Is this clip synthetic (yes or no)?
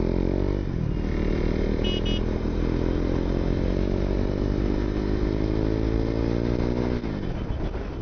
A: no